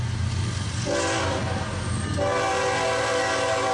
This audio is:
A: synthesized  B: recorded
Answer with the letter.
B